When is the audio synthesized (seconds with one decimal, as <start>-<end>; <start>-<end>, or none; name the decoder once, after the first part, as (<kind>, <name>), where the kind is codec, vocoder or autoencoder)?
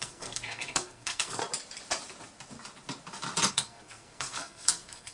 0.0-1.4 (codec, SNAC); 3.5-5.1